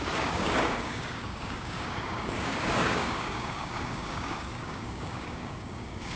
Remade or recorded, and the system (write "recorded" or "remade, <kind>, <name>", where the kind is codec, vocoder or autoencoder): remade, codec, DAC